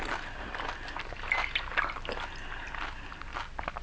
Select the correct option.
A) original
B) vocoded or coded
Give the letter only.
A